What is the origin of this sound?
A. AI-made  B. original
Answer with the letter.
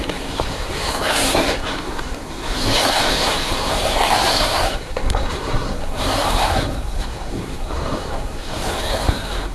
A